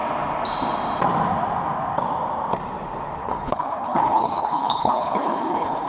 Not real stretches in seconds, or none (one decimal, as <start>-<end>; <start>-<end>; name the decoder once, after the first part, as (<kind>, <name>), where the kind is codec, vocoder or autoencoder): 3.2-5.9 (codec, HILCodec)